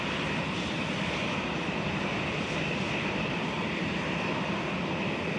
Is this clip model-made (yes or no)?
yes